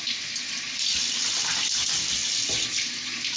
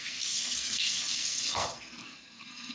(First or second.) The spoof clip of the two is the second